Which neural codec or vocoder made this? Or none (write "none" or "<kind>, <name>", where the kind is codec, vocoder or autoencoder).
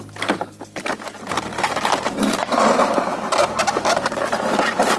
none